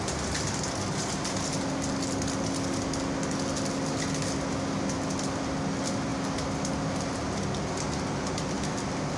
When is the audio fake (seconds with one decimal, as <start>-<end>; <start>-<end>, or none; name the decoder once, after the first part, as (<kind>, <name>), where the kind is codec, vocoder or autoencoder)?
none